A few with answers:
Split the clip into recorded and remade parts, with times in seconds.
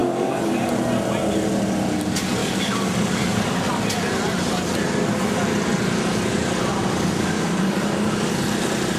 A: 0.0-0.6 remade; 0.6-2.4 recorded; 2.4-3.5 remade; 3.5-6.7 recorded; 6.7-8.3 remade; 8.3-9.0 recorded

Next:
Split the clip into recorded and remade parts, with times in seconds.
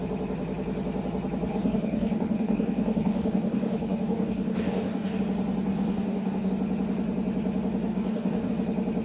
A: 0.0-1.5 recorded; 1.5-5.2 remade; 5.2-5.7 recorded; 5.7-6.5 remade; 6.5-7.9 recorded; 7.9-8.5 remade; 8.5-9.0 recorded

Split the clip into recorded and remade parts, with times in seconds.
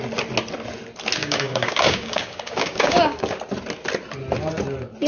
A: 0.0-1.2 recorded; 1.2-3.4 remade; 3.4-5.1 recorded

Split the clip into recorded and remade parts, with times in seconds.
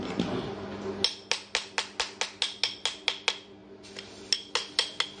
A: 0.0-5.2 recorded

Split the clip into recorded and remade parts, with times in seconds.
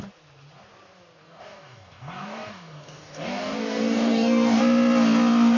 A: 0.0-1.2 recorded; 1.2-4.6 remade; 4.6-5.6 recorded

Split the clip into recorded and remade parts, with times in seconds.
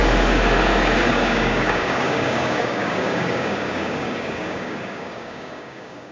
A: 0.0-1.1 recorded; 1.1-6.1 remade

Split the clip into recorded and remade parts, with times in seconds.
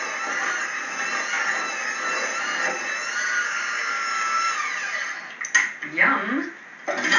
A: 0.0-3.4 recorded; 3.4-4.5 remade; 4.5-7.2 recorded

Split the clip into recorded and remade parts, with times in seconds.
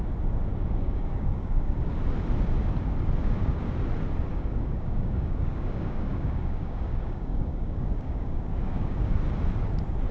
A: 0.0-0.5 recorded; 0.5-2.0 remade; 2.0-3.2 recorded; 3.2-3.7 remade; 3.7-4.3 recorded; 4.3-9.2 remade; 9.2-10.1 recorded